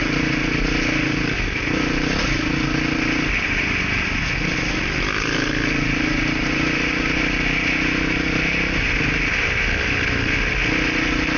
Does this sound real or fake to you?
real